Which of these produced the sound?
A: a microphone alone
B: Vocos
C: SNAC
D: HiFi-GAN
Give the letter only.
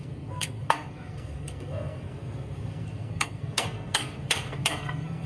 C